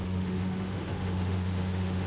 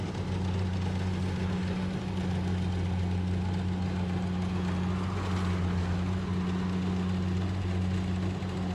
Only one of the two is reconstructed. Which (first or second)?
first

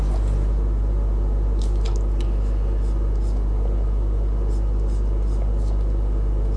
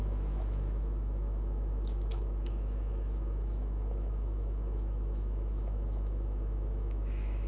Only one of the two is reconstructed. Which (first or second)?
second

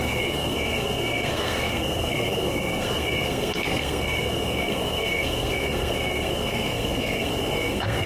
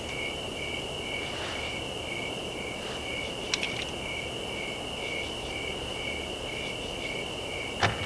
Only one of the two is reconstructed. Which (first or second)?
first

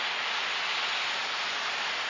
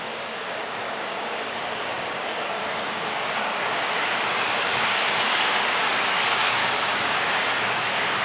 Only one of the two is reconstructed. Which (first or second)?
second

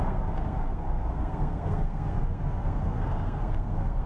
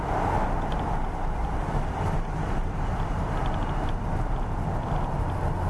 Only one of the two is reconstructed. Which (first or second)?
first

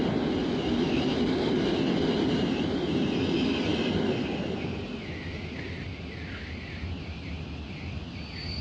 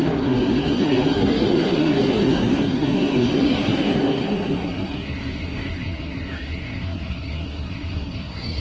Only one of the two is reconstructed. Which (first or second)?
second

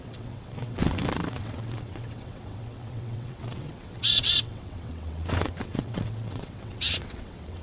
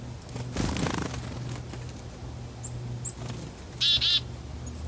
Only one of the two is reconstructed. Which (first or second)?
first